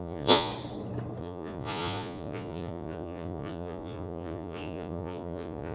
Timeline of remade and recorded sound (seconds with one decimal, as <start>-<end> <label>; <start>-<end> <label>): 0.0-0.5 remade; 0.5-1.2 recorded; 1.2-5.7 remade